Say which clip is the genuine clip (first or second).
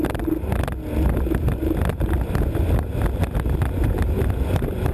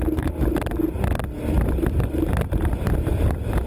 first